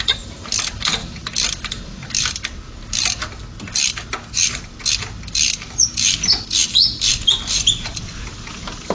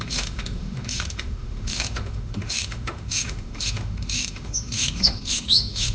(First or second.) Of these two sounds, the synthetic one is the second